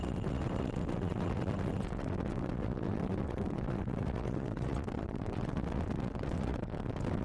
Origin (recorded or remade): remade